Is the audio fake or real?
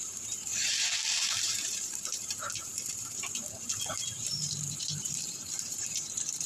fake